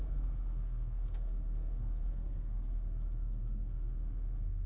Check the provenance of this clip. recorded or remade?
remade